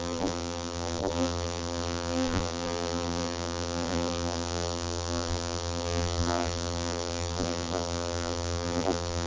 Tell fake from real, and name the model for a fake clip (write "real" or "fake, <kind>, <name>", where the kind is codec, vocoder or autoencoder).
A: fake, vocoder, BigVGAN v2